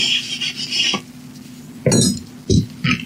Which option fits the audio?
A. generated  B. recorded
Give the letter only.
B